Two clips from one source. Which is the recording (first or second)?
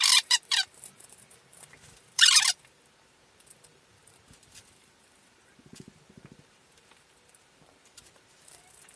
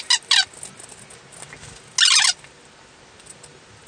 second